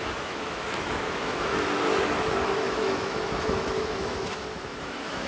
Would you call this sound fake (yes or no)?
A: yes